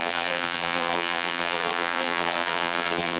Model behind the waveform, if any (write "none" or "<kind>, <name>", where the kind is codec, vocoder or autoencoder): vocoder, BigVGAN v2